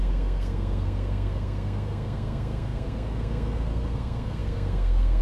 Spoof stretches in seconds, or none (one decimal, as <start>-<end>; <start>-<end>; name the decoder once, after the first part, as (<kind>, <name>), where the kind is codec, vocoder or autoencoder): 0.0-5.2 (codec, SNAC)